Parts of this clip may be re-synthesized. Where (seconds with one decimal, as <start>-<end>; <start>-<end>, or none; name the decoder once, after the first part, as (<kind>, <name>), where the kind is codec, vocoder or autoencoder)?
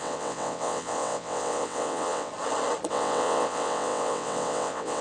0.0-2.3 (vocoder, WaveNeXt); 2.9-5.0